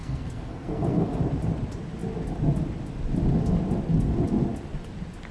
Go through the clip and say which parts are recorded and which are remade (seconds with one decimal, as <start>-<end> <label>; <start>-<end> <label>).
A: 0.0-1.2 remade; 1.2-5.3 recorded